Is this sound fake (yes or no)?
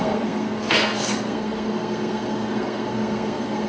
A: yes